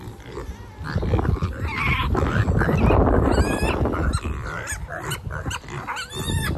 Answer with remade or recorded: recorded